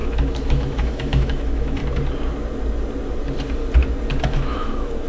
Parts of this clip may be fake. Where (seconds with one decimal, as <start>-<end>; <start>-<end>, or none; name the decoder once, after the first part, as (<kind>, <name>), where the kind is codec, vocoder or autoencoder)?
0.0-1.8 (autoencoder, DAC-VAE); 4.2-5.1